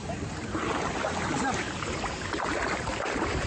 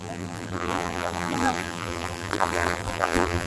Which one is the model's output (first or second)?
second